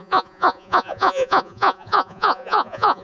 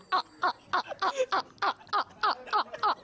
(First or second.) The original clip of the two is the second